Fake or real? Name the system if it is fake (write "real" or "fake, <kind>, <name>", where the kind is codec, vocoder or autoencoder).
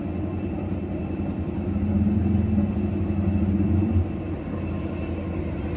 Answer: real